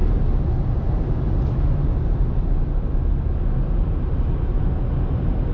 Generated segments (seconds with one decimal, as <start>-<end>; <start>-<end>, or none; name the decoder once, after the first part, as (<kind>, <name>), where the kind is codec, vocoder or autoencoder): none